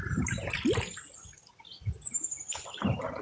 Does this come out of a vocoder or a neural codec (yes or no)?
no